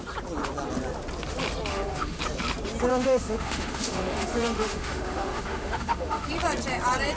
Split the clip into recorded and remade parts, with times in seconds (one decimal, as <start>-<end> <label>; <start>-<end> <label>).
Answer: 0.0-1.7 recorded; 1.7-2.2 remade; 2.2-2.9 recorded; 2.9-6.3 remade; 6.3-7.2 recorded